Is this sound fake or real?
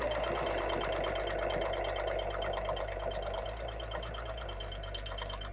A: real